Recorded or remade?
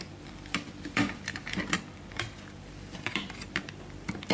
remade